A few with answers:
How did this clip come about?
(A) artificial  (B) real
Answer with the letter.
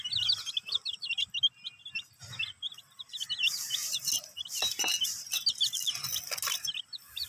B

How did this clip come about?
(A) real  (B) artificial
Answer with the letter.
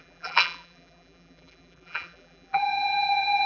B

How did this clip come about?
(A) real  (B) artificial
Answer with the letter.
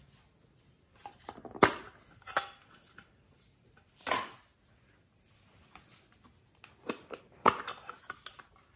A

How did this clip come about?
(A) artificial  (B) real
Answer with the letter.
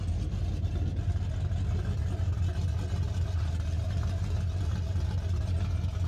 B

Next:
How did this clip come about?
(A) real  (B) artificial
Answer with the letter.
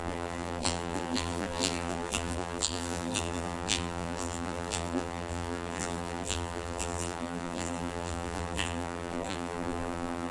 B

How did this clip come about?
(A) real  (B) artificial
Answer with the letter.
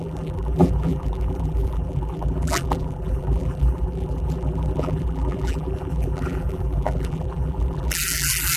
B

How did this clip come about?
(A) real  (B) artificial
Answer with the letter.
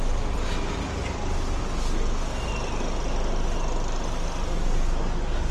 A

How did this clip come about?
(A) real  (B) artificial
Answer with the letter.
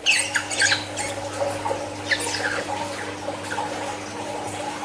A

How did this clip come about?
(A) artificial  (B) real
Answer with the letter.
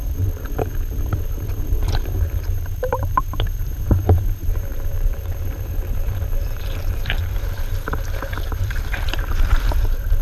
A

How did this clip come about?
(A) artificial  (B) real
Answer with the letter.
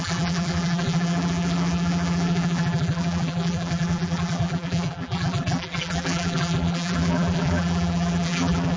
A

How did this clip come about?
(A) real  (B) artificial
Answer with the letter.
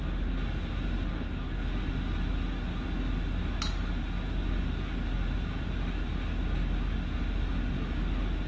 A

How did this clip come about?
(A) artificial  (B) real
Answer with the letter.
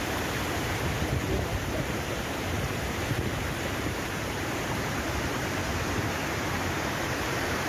A